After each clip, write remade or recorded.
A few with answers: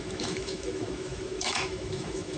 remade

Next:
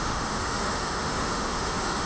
remade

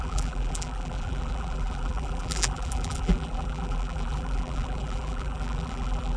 remade